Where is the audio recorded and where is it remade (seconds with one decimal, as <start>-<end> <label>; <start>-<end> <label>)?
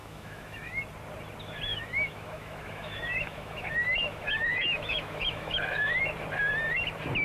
0.0-0.8 remade; 0.8-1.7 recorded; 1.7-6.0 remade; 6.0-7.2 recorded